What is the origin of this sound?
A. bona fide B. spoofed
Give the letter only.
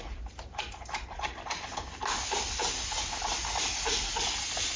A